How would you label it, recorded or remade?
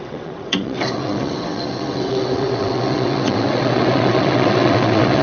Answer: remade